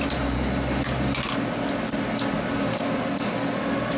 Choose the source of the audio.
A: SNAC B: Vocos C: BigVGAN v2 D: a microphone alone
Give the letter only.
D